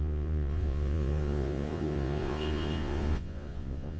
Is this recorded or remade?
remade